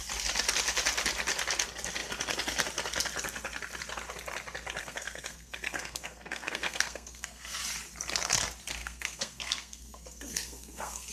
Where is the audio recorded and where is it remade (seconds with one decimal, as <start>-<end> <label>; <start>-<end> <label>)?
0.0-4.8 recorded; 4.8-7.6 remade; 7.6-8.8 recorded; 8.8-11.1 remade